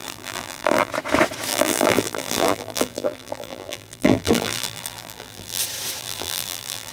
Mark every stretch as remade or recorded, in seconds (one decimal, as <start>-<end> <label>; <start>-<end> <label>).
0.0-0.9 remade; 0.9-1.5 recorded; 1.5-5.6 remade; 5.6-6.0 recorded; 6.0-6.9 remade